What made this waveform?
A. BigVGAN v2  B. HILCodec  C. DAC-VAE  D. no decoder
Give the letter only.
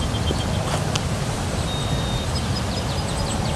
D